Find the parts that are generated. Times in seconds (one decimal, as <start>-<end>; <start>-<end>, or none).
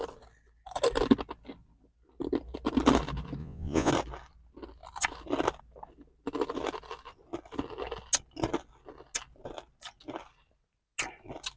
3.4-3.9